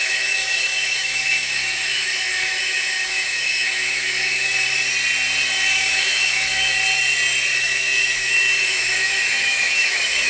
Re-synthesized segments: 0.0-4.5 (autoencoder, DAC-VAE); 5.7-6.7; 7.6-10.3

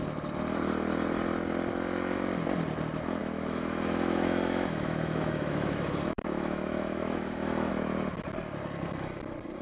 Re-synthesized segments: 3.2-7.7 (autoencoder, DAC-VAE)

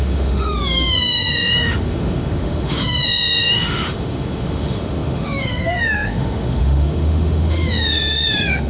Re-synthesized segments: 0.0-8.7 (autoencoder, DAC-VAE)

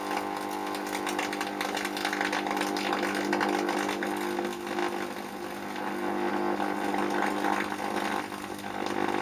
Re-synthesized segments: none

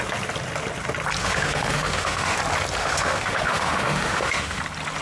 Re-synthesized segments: 1.2-2.4 (autoencoder, DAC-VAE); 2.8-4.6

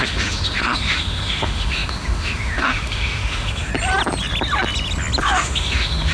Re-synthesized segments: 0.0-3.7 (autoencoder, DAC-VAE); 5.2-6.1